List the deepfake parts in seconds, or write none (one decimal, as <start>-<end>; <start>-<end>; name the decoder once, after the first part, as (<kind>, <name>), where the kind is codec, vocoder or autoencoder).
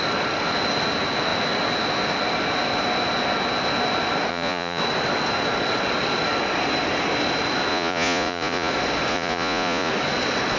4.3-4.8 (vocoder, Vocos); 7.7-8.7; 9.1-9.9